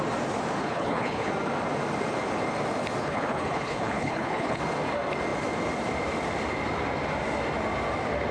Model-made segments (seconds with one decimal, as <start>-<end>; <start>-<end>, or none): 0.6-1.3; 3.0-4.6